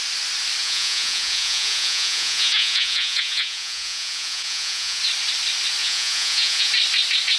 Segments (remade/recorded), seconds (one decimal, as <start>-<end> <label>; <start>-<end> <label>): 0.0-0.6 recorded; 0.6-5.0 remade; 5.0-5.8 recorded; 5.8-6.7 remade; 6.7-7.4 recorded